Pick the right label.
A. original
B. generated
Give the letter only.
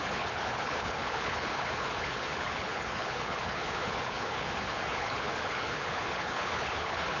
B